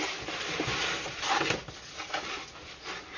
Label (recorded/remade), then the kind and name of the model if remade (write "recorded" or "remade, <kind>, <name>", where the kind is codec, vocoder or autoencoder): recorded